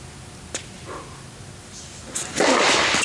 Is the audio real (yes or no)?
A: yes